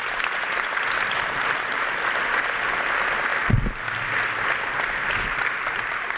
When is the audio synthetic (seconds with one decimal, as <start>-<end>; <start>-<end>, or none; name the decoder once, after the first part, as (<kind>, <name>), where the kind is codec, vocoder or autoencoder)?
none